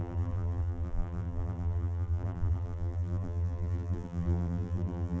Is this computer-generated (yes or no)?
yes